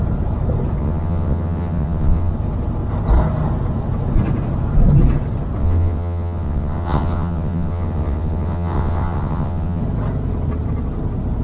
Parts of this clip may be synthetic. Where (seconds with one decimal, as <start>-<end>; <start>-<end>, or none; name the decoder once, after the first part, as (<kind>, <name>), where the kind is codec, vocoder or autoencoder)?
0.8-2.3 (vocoder, WaveNeXt); 5.6-9.8